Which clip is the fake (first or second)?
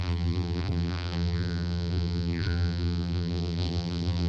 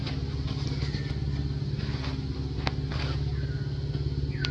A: first